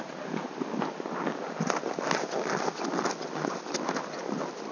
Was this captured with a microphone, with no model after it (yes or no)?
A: yes